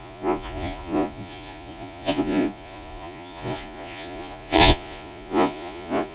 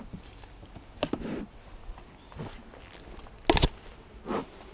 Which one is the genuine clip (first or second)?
second